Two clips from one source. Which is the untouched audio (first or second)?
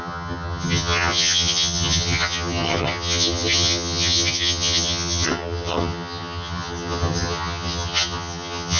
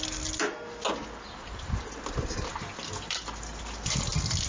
second